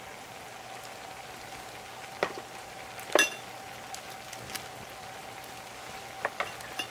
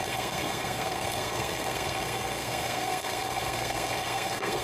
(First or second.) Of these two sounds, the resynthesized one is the second